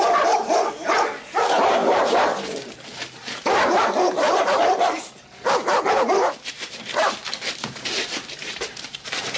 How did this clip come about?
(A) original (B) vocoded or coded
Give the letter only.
B